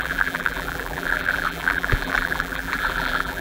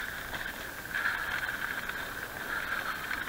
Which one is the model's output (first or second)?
first